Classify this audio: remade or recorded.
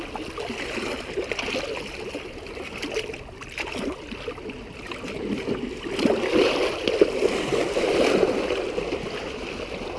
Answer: recorded